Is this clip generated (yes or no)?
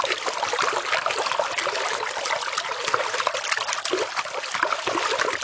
no